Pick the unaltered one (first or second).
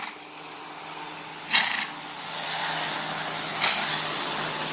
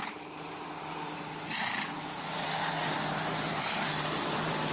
first